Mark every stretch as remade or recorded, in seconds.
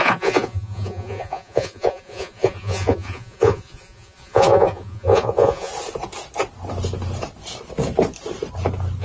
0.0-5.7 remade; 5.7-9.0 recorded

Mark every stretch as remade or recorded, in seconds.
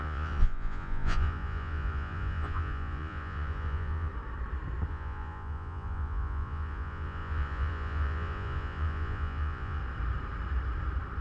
0.0-4.1 remade; 4.1-4.9 recorded; 4.9-9.8 remade; 9.8-11.2 recorded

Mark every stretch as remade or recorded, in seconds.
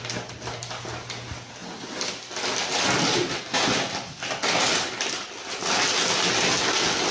0.0-7.1 recorded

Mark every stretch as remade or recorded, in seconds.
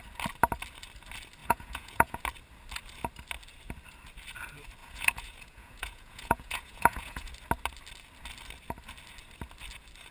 0.0-1.4 recorded; 1.4-2.2 remade; 2.2-4.8 recorded; 4.8-7.3 remade; 7.3-10.1 recorded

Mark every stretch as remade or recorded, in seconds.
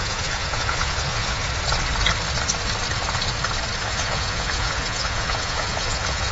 0.0-1.4 remade; 1.4-3.8 recorded; 3.8-6.3 remade